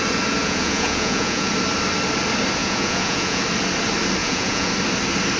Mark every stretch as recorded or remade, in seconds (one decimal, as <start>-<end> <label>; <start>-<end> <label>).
0.0-0.4 recorded; 0.4-1.5 remade; 1.5-2.6 recorded; 2.6-3.4 remade; 3.4-4.2 recorded; 4.2-4.7 remade; 4.7-5.4 recorded